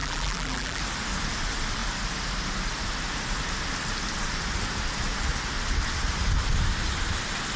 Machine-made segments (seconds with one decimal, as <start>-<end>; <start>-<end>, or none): 0.0-0.8